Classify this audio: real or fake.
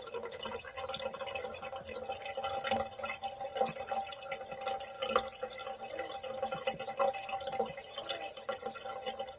real